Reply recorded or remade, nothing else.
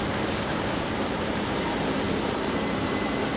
remade